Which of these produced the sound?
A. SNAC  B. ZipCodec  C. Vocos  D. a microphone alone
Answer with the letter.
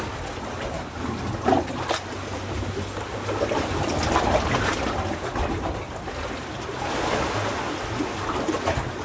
D